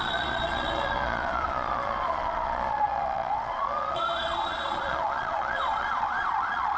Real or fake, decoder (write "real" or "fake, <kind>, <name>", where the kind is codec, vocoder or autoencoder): fake, vocoder, Vocos